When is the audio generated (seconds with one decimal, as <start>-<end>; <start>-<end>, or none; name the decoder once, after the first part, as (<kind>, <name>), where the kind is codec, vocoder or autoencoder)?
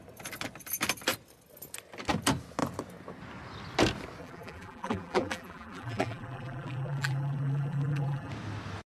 4.2-8.3 (vocoder, BigVGAN v2)